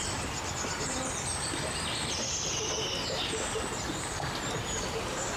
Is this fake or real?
real